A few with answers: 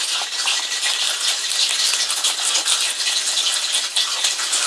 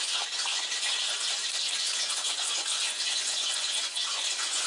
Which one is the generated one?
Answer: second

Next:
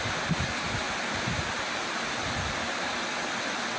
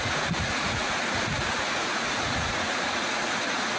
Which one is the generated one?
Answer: second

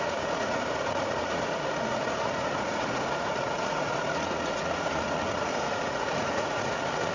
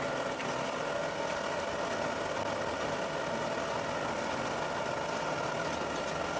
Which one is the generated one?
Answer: first